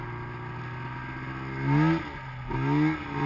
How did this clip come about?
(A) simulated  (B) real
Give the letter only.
B